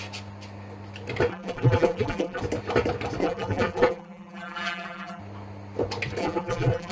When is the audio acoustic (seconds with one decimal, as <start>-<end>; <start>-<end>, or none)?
0.0-1.3; 2.4-3.2; 5.2-6.2